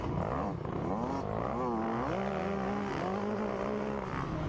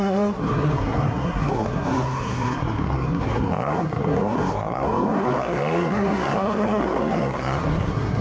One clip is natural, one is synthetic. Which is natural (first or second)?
first